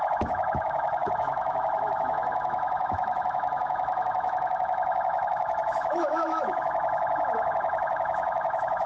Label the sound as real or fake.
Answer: fake